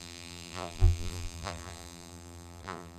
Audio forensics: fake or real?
fake